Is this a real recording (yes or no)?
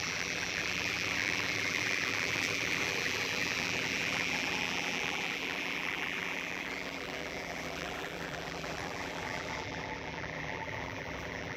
no